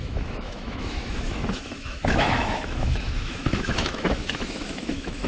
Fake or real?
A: fake